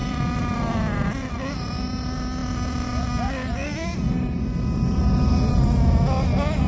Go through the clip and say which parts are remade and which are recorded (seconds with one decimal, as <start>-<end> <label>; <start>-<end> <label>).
0.0-1.3 remade; 1.3-6.7 recorded

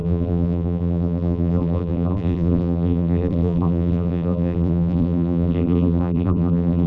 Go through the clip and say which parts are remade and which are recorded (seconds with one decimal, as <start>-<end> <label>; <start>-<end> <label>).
0.0-6.9 remade